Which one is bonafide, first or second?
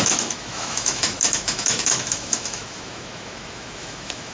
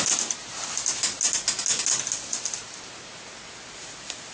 second